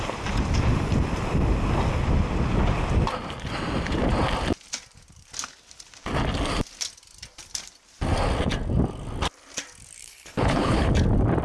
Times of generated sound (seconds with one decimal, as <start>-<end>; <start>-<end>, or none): 10.0-10.9